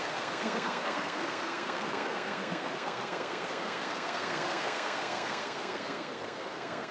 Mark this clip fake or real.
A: fake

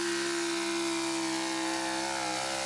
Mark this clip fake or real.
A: real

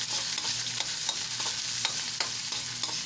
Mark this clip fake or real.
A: real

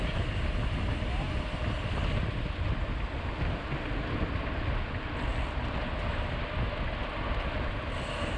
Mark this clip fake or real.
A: real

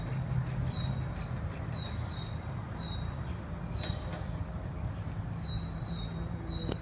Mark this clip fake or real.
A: real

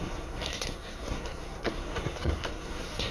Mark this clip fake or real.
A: fake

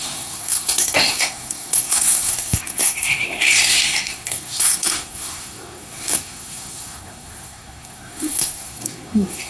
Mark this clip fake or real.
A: fake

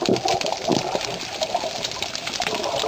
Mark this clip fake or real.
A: real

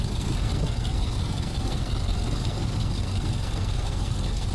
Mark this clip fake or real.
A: fake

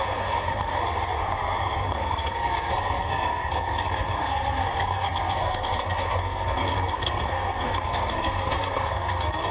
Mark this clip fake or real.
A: fake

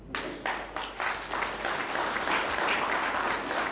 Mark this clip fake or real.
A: real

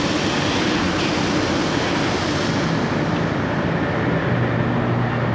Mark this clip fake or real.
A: real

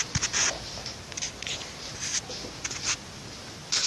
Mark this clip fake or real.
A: real